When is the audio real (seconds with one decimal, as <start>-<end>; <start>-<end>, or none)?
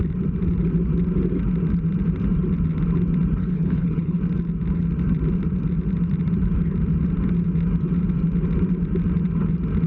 0.0-3.4; 4.2-9.9